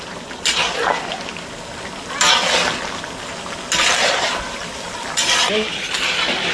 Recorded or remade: recorded